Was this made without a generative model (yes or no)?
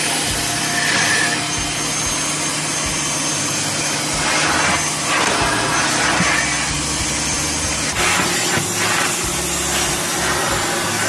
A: yes